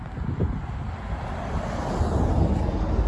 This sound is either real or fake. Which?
real